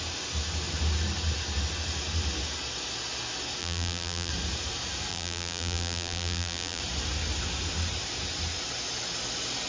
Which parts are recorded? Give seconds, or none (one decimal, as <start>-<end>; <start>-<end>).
0.0-3.6; 4.3-5.1; 6.8-9.7